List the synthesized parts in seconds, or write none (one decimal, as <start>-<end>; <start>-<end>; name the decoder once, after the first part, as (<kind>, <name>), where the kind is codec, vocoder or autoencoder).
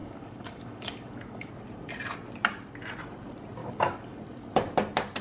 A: 0.0-1.5 (codec, DAC); 3.6-4.2